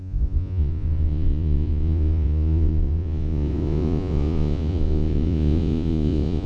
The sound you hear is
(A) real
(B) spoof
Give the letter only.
B